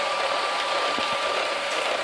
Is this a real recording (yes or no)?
yes